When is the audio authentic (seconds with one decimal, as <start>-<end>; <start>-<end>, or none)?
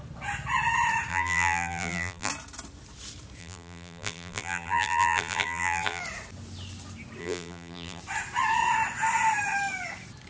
0.0-1.1; 2.3-3.4; 6.0-7.2; 8.0-10.3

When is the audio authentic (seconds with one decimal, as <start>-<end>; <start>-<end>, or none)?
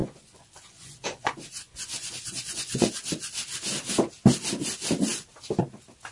2.9-6.1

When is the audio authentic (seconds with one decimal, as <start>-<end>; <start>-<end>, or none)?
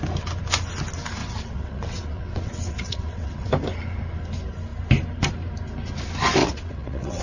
0.0-1.2; 3.5-6.4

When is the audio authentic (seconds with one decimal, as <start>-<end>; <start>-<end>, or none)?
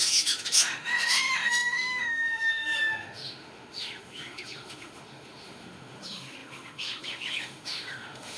none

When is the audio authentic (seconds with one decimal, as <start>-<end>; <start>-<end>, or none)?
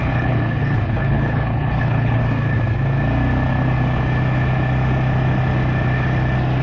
2.2-6.6